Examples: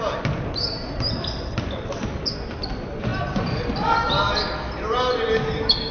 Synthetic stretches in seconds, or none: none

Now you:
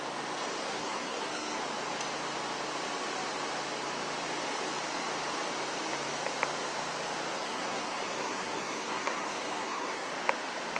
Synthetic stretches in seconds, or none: 0.6-1.6 (codec, SNAC); 7.3-10.1

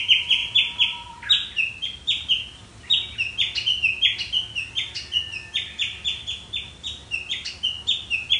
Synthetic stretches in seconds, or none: none

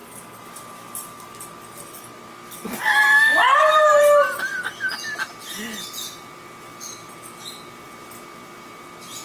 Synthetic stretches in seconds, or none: none

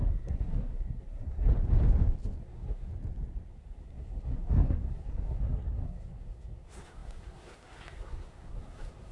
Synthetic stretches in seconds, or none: 0.0-1.5 (codec, SNAC); 2.4-2.9; 3.5-9.1

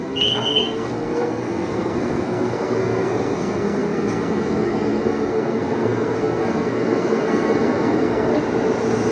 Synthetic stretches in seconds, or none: 0.0-8.3 (codec, SNAC)

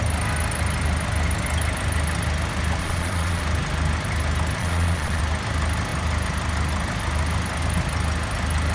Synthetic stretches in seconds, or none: 2.8-3.4 (vocoder, Vocos); 4.6-5.2